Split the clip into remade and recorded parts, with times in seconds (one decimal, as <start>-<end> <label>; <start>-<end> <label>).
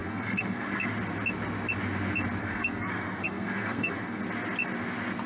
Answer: 0.0-0.9 remade; 0.9-2.4 recorded; 2.4-4.2 remade; 4.2-5.3 recorded